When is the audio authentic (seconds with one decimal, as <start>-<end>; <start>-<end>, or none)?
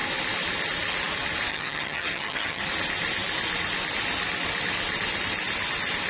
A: 0.0-1.5; 2.6-6.1